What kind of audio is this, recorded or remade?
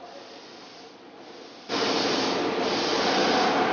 recorded